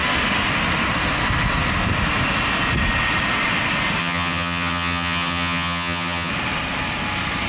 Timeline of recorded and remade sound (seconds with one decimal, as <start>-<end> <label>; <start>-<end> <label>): 0.0-4.0 recorded; 4.0-6.3 remade; 6.3-7.5 recorded